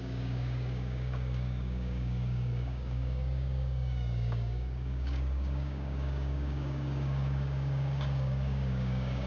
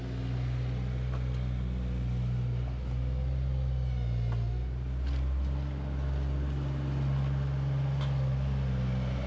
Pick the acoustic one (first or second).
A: second